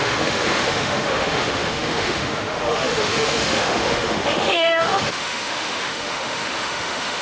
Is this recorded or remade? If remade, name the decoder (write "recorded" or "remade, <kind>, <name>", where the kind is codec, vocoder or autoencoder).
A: remade, autoencoder, DAC-VAE